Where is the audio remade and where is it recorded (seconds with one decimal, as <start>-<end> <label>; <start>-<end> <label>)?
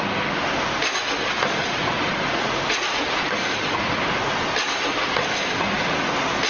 0.0-1.6 recorded; 1.6-3.9 remade; 3.9-6.5 recorded